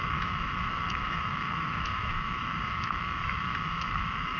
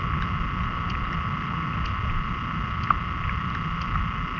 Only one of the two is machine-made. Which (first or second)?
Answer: first